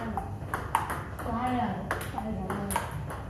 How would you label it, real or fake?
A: real